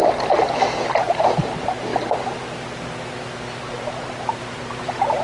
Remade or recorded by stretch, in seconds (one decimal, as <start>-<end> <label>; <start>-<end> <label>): 0.0-1.0 recorded; 1.0-1.9 remade; 1.9-3.6 recorded; 3.6-5.2 remade